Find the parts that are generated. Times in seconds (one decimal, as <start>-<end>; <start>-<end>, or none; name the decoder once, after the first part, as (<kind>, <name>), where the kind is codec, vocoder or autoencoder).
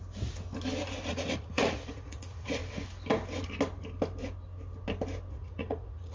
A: 1.1-2.6 (vocoder, Vocos); 5.3-6.1